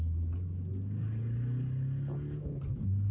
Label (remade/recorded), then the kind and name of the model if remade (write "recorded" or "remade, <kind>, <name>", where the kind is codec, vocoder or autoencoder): recorded